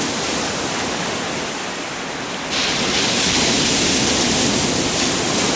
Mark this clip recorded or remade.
recorded